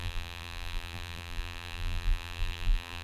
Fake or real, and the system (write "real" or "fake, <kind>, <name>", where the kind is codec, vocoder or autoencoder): fake, vocoder, BigVGAN v2